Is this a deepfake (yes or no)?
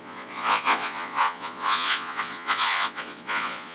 yes